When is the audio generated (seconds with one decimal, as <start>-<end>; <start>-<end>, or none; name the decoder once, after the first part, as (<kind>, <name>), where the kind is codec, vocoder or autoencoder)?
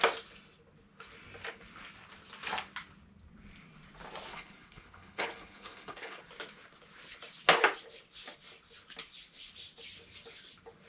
4.3-6.2 (codec, HILCodec)